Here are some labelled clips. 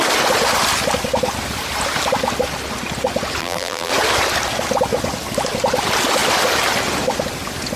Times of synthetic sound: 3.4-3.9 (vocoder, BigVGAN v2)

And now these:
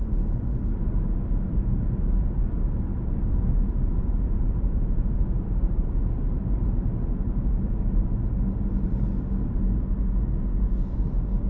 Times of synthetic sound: 2.9-6.0 (vocoder, BigVGAN v2)